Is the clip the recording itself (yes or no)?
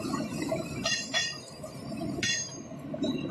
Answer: no